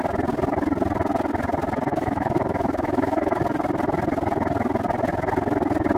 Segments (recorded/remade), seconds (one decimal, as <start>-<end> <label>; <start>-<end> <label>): 0.0-1.9 recorded; 1.9-3.4 remade; 3.4-6.0 recorded